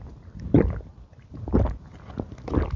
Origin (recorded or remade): recorded